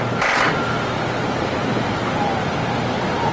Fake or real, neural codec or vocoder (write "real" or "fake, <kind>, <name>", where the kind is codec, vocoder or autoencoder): real